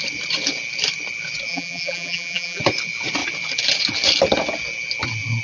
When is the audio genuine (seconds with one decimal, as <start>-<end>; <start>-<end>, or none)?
0.0-1.5; 2.6-5.4